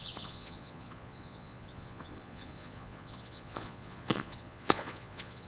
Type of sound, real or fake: fake